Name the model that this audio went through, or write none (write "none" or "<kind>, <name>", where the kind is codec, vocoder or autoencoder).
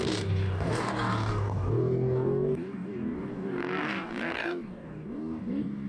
codec, DAC